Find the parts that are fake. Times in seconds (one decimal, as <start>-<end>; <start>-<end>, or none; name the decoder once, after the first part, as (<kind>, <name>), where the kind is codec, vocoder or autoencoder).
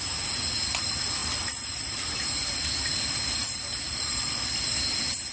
1.2-2.5 (vocoder, BigVGAN v2); 3.7-4.2